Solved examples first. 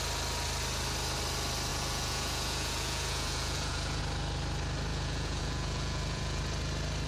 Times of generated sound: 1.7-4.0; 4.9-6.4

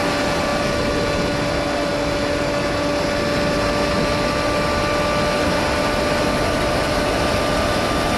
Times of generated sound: none